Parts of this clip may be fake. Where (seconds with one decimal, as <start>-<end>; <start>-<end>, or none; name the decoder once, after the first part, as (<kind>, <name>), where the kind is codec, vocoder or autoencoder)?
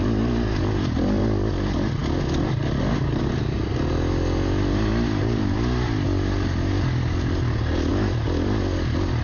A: none